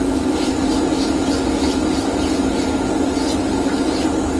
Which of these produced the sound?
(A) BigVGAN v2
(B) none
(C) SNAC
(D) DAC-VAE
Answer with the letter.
B